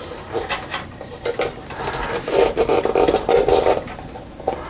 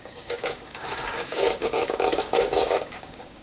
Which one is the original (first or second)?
first